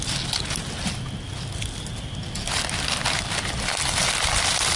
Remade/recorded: recorded